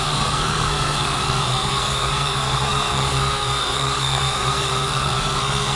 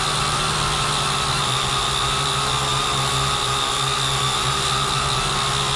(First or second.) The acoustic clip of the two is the second